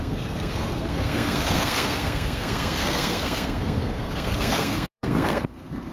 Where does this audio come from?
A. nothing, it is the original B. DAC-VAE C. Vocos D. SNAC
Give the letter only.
D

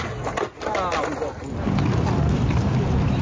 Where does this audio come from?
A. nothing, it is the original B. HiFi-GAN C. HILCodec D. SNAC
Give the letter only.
A